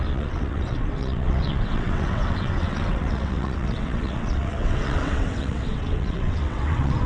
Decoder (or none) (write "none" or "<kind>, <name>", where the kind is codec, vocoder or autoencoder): vocoder, WaveNeXt